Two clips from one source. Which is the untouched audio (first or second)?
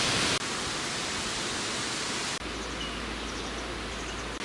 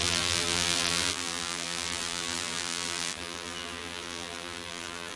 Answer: first